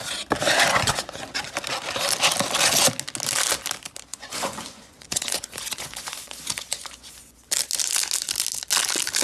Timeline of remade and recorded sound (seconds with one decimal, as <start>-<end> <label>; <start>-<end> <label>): 0.0-0.7 recorded; 0.7-1.4 remade; 1.4-4.1 recorded; 4.1-7.5 remade; 7.5-9.2 recorded